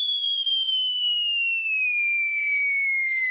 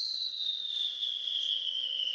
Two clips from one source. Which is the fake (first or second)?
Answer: second